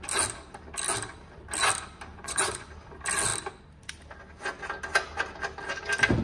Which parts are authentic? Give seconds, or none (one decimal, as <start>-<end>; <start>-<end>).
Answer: 0.0-2.1; 2.7-6.2